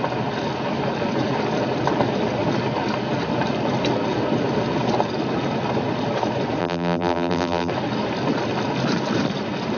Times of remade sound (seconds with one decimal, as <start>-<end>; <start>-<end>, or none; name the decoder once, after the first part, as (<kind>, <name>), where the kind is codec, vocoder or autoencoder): 6.6-7.7 (vocoder, BigVGAN v2)